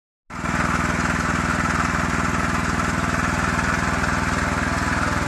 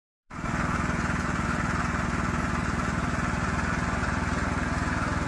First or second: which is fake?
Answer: second